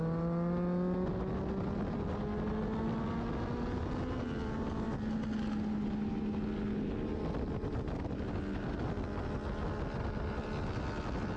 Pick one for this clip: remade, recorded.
recorded